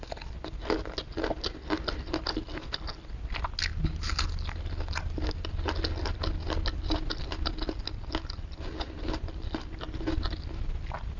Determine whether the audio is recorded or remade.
recorded